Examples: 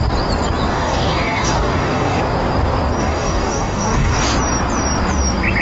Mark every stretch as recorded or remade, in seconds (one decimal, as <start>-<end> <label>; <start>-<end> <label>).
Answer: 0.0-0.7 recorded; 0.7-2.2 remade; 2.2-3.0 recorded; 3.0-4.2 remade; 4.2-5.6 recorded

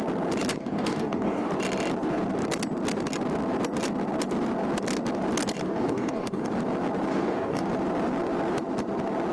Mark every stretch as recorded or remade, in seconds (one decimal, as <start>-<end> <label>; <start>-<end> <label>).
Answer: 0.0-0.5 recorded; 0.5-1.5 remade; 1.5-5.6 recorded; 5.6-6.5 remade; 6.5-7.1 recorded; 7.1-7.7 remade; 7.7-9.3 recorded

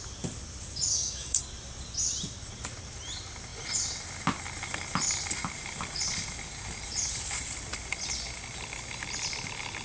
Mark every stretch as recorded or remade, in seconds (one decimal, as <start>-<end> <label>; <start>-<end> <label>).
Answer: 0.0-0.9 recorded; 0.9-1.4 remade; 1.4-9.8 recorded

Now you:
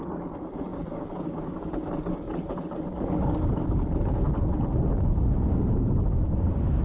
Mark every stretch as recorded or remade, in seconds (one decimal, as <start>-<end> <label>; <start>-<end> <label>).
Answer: 0.0-0.7 recorded; 0.7-1.9 remade; 1.9-3.2 recorded; 3.2-3.8 remade; 3.8-4.7 recorded; 4.7-6.8 remade